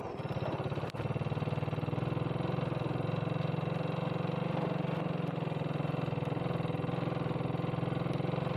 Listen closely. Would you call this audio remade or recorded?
recorded